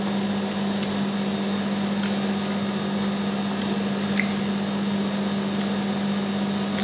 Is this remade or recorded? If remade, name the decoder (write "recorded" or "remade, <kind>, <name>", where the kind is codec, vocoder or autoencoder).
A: recorded